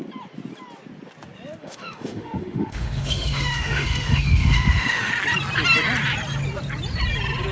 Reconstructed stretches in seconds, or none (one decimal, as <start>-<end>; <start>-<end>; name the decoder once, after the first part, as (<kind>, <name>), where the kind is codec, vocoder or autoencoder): 1.6-5.1 (autoencoder, DAC-VAE)